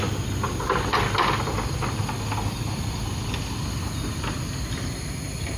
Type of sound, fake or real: real